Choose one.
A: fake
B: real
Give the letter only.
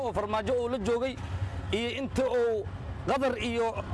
B